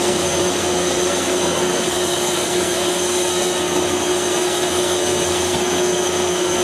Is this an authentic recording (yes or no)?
no